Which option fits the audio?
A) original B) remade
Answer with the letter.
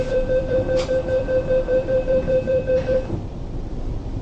B